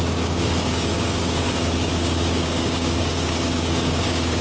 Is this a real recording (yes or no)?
no